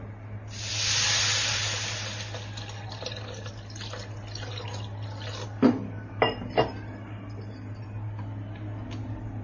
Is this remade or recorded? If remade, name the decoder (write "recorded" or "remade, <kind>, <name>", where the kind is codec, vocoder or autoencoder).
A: recorded